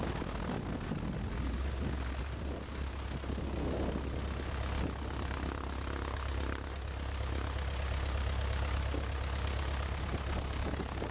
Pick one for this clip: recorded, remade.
recorded